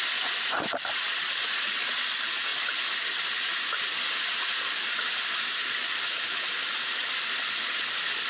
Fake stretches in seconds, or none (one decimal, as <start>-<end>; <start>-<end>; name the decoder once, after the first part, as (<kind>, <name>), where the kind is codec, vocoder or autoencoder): none